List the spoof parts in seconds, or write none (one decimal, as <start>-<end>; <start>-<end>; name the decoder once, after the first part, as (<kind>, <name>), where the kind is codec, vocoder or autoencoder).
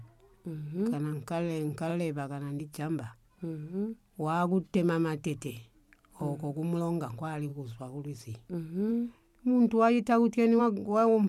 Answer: 1.9-2.6 (autoencoder, DAC-VAE); 9.3-10.6